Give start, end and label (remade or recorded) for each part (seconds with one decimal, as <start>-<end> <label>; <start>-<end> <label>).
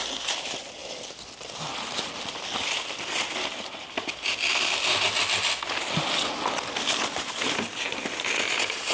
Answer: 0.0-8.9 recorded